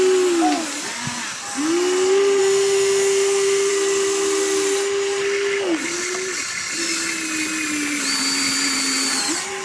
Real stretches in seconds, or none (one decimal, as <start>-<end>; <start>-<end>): 0.0-2.4; 3.7-9.6